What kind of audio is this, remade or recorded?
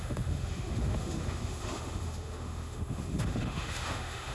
remade